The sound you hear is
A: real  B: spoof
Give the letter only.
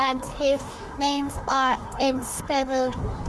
B